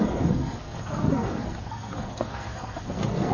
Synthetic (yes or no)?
yes